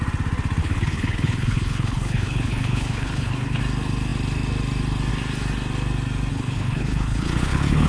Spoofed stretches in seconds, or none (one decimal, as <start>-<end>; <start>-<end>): 0.6-3.6; 6.3-7.9